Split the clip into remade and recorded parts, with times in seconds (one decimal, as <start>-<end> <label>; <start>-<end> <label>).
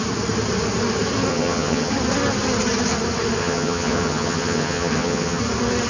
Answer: 0.0-1.3 recorded; 1.3-1.9 remade; 1.9-3.4 recorded; 3.4-5.4 remade; 5.4-5.9 recorded